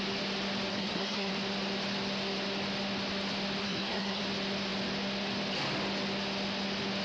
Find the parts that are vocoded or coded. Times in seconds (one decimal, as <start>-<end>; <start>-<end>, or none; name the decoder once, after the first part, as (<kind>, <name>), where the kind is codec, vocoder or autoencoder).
0.7-1.3 (codec, SNAC); 3.6-4.2